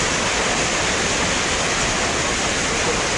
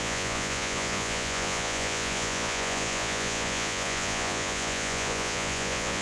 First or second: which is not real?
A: second